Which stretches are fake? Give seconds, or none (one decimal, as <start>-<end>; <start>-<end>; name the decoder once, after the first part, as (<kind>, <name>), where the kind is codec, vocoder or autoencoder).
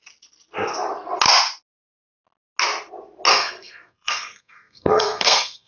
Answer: 3.3-5.7 (codec, SNAC)